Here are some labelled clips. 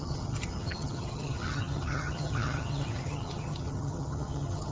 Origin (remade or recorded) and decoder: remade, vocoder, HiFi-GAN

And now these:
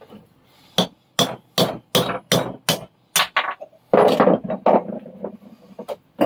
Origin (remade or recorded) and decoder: recorded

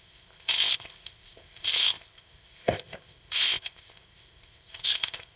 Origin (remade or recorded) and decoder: remade, codec, ZipCodec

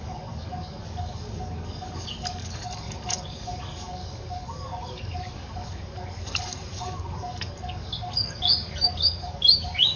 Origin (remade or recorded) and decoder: remade, codec, DAC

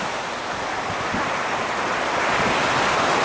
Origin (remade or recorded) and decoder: recorded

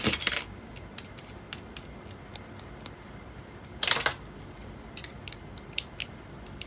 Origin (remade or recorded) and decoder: recorded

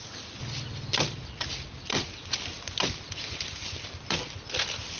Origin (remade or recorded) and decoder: recorded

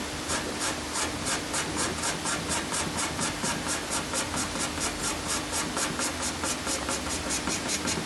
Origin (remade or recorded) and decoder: recorded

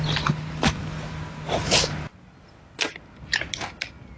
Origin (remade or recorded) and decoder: recorded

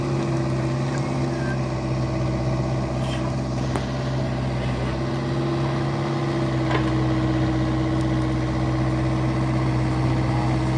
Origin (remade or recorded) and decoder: recorded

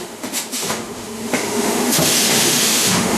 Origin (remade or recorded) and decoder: remade, autoencoder, DAC-VAE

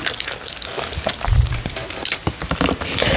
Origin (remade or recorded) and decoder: recorded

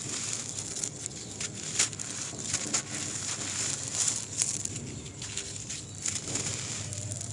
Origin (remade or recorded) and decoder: recorded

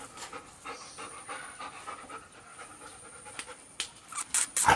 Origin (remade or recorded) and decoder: recorded